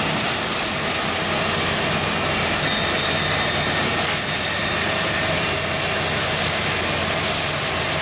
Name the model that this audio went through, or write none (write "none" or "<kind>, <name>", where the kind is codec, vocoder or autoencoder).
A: none